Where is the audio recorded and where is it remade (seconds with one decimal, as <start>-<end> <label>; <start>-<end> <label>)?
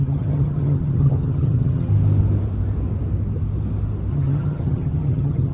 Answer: 0.0-1.9 remade; 1.9-4.1 recorded; 4.1-5.5 remade